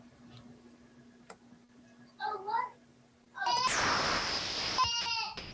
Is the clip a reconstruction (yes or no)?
no